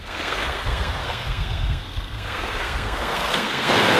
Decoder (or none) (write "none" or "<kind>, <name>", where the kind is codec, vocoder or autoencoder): codec, SNAC